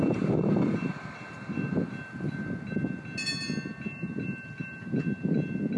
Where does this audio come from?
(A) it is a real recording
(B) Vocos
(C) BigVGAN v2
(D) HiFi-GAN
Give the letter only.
A